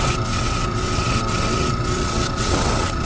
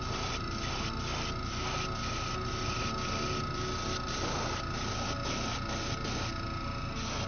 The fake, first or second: first